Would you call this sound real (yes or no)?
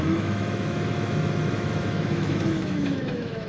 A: no